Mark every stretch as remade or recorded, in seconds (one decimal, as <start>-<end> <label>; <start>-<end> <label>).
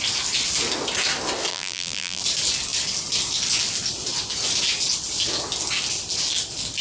0.0-1.5 recorded; 1.5-2.2 remade; 2.2-6.8 recorded